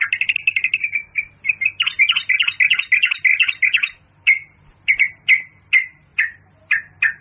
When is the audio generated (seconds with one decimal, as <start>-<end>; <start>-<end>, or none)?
none